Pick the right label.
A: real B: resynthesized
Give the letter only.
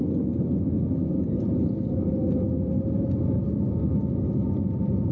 A